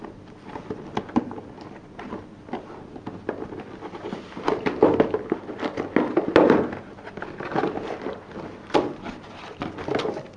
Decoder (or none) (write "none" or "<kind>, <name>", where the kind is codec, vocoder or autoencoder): none